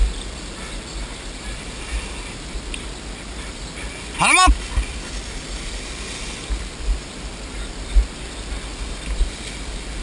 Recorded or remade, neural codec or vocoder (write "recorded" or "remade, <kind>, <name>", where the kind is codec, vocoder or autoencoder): recorded